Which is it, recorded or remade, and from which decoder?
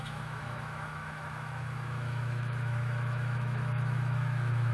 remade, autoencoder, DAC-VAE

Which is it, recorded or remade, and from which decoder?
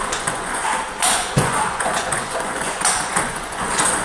remade, vocoder, Vocos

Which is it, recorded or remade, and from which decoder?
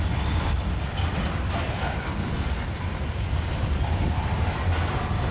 recorded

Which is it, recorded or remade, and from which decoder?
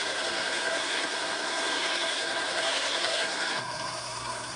remade, codec, SNAC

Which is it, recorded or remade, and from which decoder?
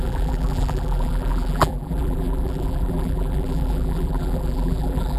remade, vocoder, BigVGAN v2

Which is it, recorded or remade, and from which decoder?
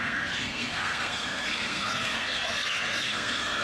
remade, codec, SNAC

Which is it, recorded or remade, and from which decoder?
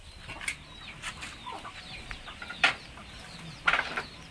recorded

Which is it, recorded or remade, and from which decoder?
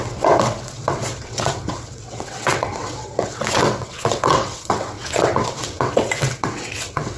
remade, vocoder, WaveNeXt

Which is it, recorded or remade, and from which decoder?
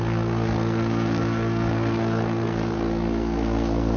remade, codec, SNAC